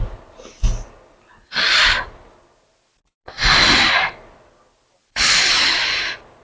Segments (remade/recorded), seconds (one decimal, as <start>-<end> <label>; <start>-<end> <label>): 0.0-6.4 recorded